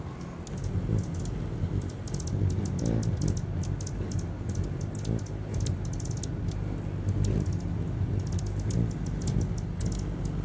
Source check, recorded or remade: recorded